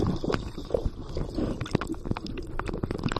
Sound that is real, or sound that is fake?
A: real